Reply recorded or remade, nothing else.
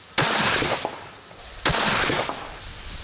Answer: recorded